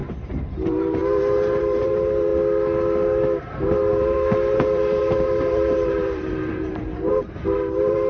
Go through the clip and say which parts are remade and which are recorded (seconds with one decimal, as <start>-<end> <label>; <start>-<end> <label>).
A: 0.0-2.3 remade; 2.3-3.4 recorded; 3.4-8.1 remade